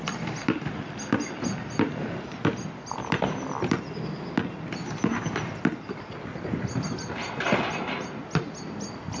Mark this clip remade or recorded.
recorded